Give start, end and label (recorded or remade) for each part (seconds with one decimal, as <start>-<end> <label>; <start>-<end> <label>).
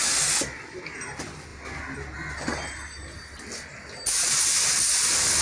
0.0-5.4 recorded